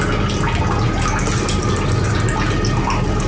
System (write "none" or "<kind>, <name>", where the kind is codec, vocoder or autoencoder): none